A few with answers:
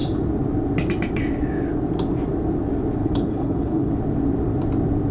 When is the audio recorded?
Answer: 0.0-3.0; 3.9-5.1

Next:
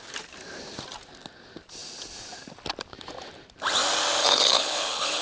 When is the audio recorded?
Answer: 0.0-4.2